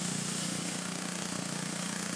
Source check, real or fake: fake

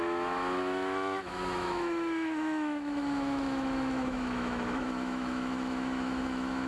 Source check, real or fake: fake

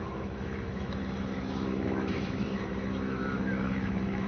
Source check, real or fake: fake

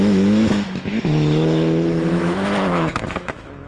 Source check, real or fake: fake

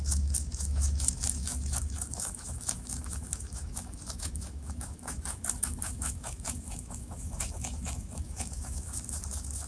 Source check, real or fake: fake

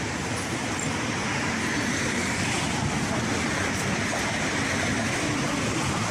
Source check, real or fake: real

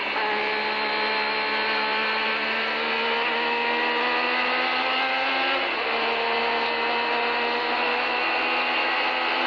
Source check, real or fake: real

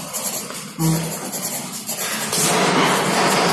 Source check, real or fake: real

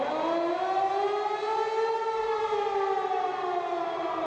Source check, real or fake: real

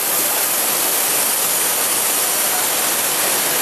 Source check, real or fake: real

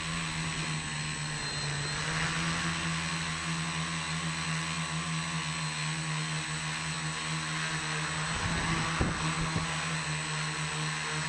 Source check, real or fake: real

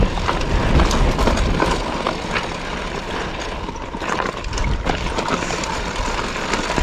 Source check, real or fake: real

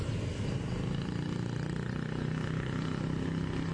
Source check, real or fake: real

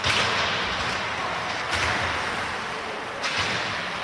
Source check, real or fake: real